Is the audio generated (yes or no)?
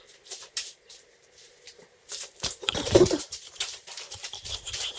yes